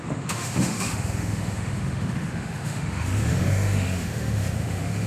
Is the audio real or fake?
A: fake